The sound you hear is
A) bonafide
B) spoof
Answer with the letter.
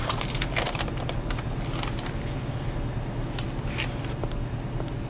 A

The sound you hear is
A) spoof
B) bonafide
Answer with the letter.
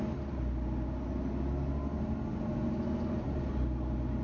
B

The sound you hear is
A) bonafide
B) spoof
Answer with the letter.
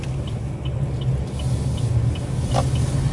A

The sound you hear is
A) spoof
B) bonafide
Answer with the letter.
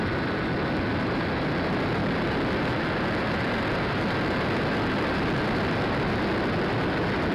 B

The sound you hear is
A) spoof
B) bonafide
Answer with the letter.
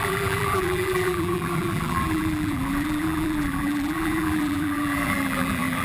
A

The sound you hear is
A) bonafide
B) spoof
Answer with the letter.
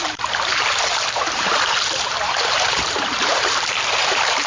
B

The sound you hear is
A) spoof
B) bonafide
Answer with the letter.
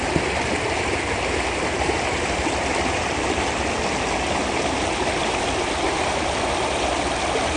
B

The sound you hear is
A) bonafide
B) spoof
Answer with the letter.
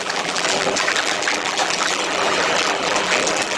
B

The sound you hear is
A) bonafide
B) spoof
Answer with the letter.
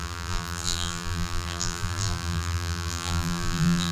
B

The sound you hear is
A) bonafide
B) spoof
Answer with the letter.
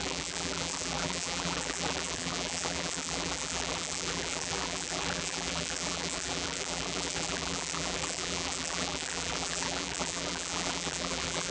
B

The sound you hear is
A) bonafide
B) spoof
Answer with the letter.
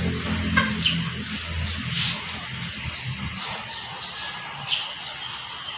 A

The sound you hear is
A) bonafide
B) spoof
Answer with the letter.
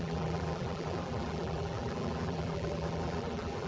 B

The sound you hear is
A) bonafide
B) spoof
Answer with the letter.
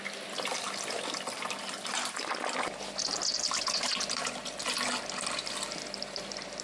A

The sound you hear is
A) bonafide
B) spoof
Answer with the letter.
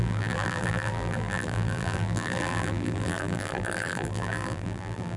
B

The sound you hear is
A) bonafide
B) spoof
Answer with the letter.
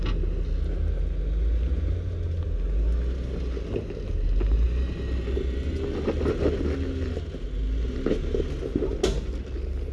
A